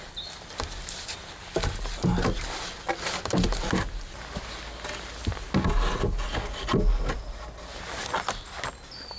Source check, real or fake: real